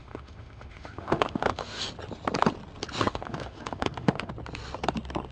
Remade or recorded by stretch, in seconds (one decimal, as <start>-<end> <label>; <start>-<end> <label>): 0.0-1.8 remade; 1.8-3.1 recorded; 3.1-4.3 remade; 4.3-5.3 recorded